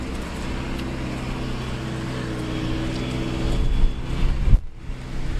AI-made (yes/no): no